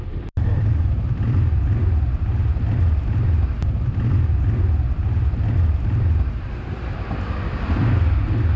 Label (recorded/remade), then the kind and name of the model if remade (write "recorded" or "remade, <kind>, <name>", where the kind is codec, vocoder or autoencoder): recorded